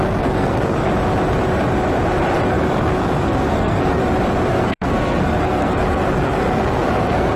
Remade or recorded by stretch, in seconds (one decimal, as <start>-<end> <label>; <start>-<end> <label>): 0.0-0.9 remade; 0.9-2.5 recorded; 2.5-4.0 remade; 4.0-4.5 recorded; 4.5-7.4 remade